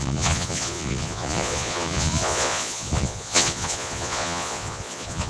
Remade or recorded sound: remade